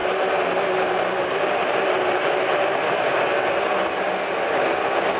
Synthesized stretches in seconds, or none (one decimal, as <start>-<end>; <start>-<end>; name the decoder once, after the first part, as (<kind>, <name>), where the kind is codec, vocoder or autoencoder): 0.0-3.1 (vocoder, BigVGAN v2)